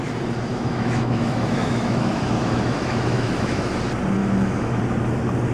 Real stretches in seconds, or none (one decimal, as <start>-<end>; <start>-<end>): 0.0-0.5; 3.7-4.2; 4.8-5.5